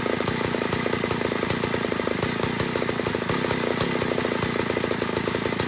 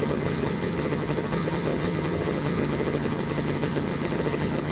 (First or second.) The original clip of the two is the first